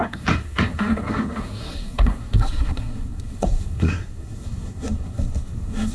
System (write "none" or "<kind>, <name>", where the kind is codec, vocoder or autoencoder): codec, SNAC